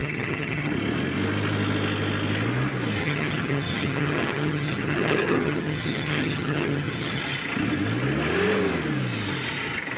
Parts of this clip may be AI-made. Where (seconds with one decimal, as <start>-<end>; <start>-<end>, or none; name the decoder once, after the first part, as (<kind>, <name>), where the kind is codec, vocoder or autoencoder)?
0.0-0.7 (vocoder, HiFi-GAN); 3.0-7.2